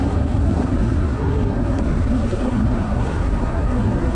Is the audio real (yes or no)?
no